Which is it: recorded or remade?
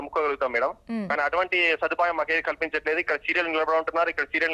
recorded